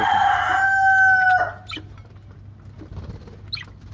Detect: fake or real real